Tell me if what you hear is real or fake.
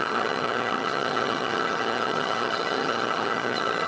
fake